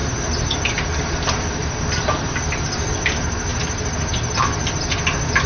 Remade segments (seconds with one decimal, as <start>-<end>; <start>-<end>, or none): none

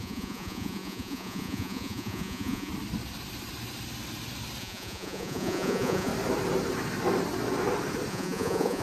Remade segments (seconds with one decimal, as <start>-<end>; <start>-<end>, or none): 0.0-2.7; 4.6-6.1; 8.1-8.8